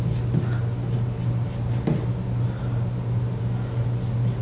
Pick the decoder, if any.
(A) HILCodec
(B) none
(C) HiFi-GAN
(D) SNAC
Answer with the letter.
B